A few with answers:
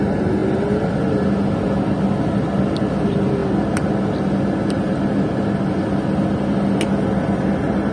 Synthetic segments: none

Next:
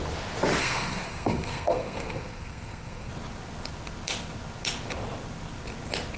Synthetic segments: 0.6-3.1 (codec, SNAC)

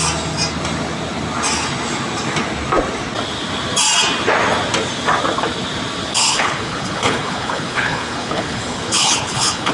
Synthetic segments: 6.1-9.7 (codec, HILCodec)

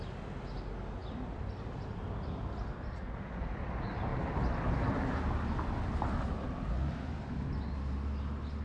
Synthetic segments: 1.0-1.6 (vocoder, BigVGAN v2)

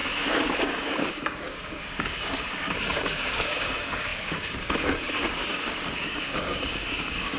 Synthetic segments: 0.0-7.4 (codec, DAC)

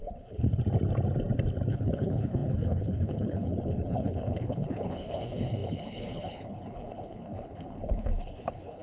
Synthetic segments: 0.0-0.5 (codec, HILCodec); 1.7-8.8

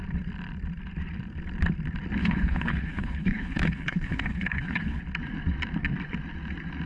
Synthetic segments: 2.2-5.0 (codec, HILCodec)

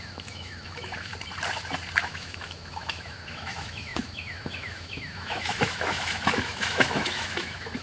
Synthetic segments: 0.0-1.1 (autoencoder, DAC-VAE); 2.0-7.8